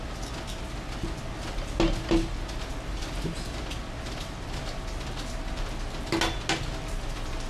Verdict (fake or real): real